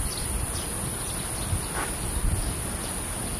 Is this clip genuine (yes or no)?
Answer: yes